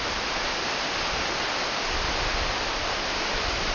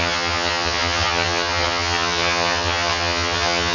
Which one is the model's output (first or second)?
second